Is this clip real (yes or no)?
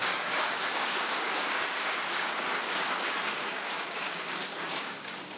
no